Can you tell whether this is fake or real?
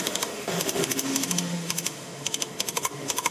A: fake